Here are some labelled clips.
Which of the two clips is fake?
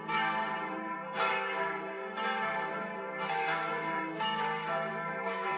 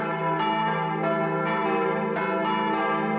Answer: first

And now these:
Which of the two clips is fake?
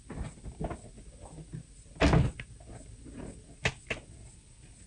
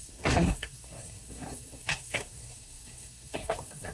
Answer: second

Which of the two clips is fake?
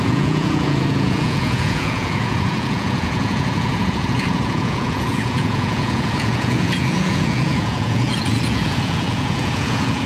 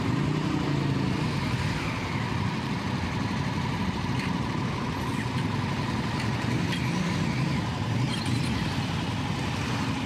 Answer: first